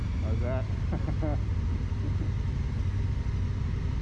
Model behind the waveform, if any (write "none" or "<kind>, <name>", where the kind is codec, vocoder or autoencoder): none